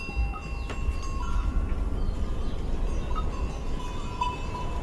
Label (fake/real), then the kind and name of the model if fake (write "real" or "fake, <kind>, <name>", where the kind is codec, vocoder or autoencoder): real